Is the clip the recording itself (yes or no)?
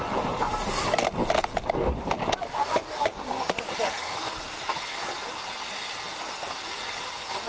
yes